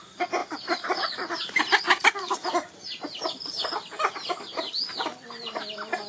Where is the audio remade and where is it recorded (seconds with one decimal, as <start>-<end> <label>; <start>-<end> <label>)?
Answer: 0.0-6.1 recorded